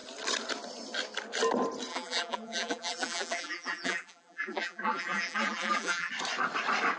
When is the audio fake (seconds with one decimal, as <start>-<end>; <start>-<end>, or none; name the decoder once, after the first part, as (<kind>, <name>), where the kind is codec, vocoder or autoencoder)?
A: 1.9-6.1 (vocoder, BigVGAN v2)